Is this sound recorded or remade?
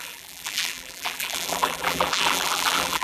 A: remade